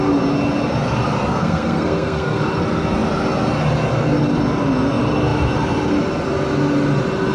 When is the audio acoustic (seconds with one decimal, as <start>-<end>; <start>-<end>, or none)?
0.0-1.3; 2.4-7.3